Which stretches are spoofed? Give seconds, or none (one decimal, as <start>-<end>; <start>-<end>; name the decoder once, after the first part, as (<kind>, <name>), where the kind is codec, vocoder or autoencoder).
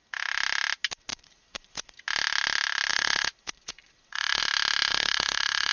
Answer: 1.1-1.9 (vocoder, Vocos); 2.9-4.4; 4.9-5.7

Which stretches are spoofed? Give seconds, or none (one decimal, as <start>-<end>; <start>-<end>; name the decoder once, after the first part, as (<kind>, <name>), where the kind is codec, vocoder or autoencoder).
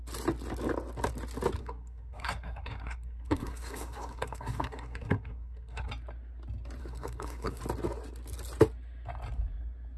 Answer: 1.6-5.9 (codec, SNAC); 6.8-7.6